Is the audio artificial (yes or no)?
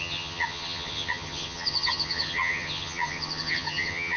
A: yes